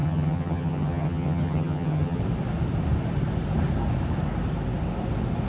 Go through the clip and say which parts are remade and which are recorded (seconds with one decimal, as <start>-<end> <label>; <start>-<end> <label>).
0.0-2.2 remade; 2.2-5.5 recorded